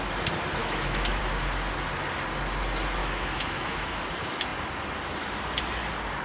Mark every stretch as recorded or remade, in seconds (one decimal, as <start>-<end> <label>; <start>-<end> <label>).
0.0-0.6 recorded; 0.6-1.2 remade; 1.2-3.0 recorded; 3.0-4.0 remade; 4.0-6.2 recorded